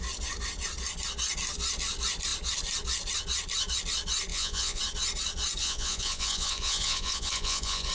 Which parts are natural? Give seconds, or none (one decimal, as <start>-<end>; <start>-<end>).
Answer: 0.0-4.3; 4.8-5.6